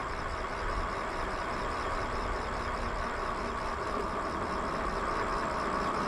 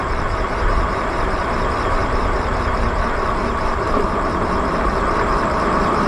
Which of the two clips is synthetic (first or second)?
second